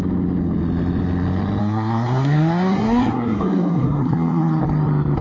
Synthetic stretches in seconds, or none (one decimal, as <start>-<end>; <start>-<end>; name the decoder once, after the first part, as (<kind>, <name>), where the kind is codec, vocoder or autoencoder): 1.6-4.6 (codec, SNAC)